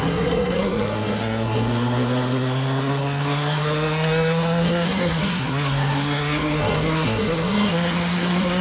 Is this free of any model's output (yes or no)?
no